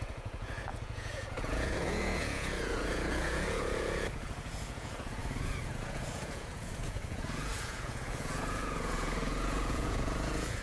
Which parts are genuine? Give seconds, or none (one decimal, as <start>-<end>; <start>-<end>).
none